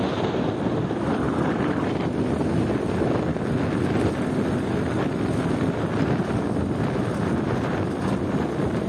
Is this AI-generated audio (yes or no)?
no